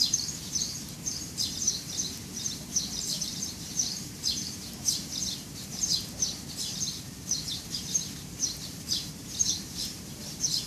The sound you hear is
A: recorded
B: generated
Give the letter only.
B